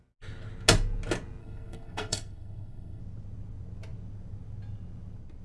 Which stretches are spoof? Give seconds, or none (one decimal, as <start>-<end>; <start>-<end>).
1.4-3.0